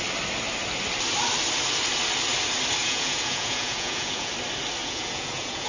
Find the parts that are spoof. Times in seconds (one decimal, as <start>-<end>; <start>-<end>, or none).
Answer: 2.8-4.3; 4.8-5.7